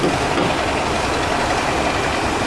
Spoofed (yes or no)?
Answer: no